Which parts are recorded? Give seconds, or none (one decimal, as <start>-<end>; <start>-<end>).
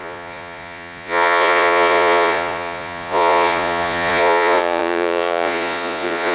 none